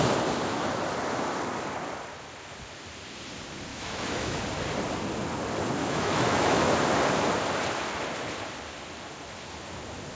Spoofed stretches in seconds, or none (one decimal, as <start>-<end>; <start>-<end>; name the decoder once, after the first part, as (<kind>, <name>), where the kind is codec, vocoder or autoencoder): 3.7-4.4 (autoencoder, DAC-VAE); 5.8-6.7